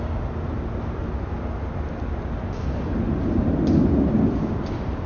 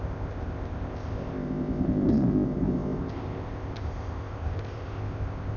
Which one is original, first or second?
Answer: first